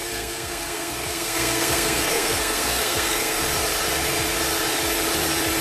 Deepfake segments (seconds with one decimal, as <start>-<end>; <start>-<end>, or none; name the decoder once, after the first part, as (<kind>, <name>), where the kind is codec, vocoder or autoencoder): 0.0-3.4 (codec, SNAC)